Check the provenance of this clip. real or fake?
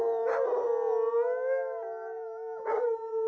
real